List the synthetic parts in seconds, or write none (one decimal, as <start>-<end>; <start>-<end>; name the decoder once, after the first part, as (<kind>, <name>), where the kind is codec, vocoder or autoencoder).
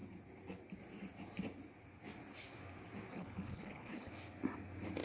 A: 3.1-4.1 (codec, HILCodec)